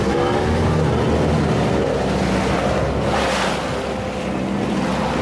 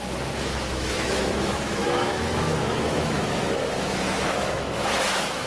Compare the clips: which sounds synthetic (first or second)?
second